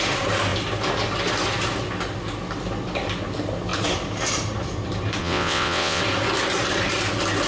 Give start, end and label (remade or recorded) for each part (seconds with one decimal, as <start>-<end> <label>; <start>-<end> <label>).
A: 0.0-5.2 recorded; 5.2-6.0 remade; 6.0-7.5 recorded